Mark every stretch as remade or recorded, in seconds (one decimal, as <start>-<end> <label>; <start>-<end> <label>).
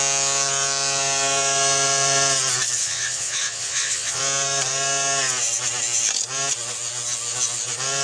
0.0-2.8 recorded; 2.8-4.2 remade; 4.2-8.0 recorded